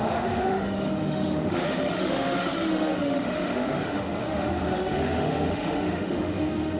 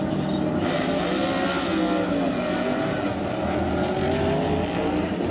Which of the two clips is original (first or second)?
second